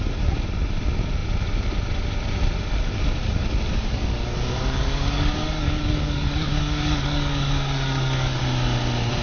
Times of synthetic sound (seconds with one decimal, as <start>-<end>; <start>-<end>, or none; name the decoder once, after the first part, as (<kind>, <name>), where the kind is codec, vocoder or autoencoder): 3.7-8.4 (codec, DAC)